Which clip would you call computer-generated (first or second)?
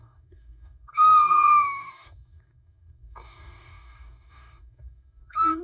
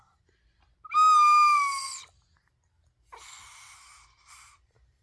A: first